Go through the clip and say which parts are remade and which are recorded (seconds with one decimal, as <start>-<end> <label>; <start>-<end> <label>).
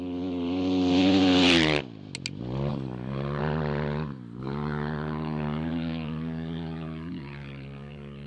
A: 0.0-2.7 recorded; 2.7-3.4 remade; 3.4-4.4 recorded; 4.4-8.3 remade